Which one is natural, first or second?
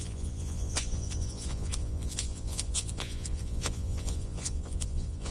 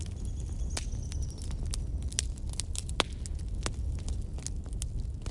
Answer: second